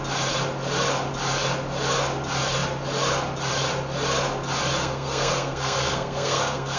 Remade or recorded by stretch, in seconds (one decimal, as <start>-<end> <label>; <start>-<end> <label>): 0.0-4.8 recorded; 4.8-6.8 remade